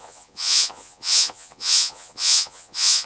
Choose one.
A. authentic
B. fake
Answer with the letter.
B